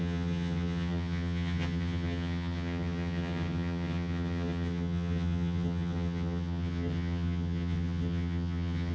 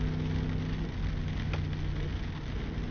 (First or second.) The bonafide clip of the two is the second